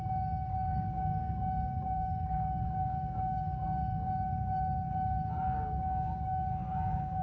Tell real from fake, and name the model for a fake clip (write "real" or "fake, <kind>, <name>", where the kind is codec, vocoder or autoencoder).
fake, codec, DAC